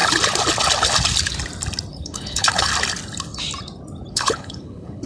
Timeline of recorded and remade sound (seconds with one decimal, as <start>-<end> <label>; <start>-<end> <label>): 0.0-1.9 recorded; 1.9-2.7 remade; 2.7-4.1 recorded; 4.1-5.1 remade

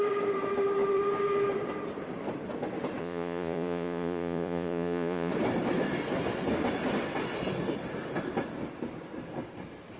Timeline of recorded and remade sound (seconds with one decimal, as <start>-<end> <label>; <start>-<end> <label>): 0.0-3.0 recorded; 3.0-5.3 remade; 5.3-10.0 recorded

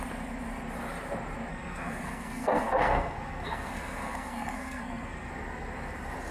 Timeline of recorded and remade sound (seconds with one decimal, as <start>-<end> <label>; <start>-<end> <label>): 0.0-1.5 recorded; 1.5-5.3 remade; 5.3-6.3 recorded

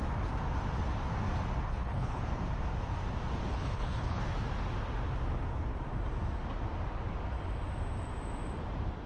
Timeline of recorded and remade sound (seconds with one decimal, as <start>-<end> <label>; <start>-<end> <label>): 0.0-1.7 recorded; 1.7-2.2 remade; 2.2-3.5 recorded; 3.5-4.2 remade; 4.2-9.1 recorded

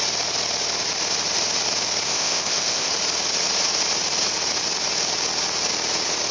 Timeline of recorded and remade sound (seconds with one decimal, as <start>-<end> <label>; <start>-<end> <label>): 0.0-2.1 recorded; 2.1-2.9 remade; 2.9-6.3 recorded

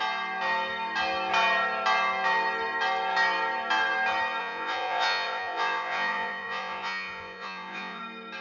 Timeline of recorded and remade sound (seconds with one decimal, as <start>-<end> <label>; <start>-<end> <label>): 0.0-4.4 recorded; 4.4-8.0 remade; 8.0-8.4 recorded

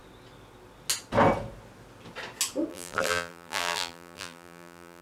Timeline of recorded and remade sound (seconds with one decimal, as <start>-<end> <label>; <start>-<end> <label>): 0.0-2.7 recorded; 2.7-5.0 remade

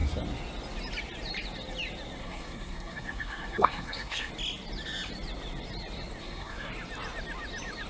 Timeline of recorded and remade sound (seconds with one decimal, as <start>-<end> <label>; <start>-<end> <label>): 0.0-2.2 recorded; 2.2-4.3 remade; 4.3-6.2 recorded; 6.2-6.7 remade; 6.7-7.9 recorded